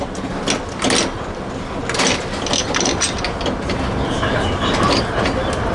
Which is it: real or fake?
real